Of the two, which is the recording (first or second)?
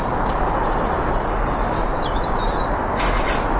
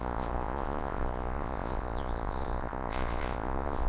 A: first